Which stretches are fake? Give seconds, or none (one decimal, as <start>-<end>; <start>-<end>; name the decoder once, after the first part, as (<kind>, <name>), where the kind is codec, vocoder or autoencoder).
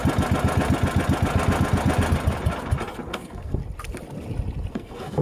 3.1-3.6 (codec, SNAC); 4.7-5.2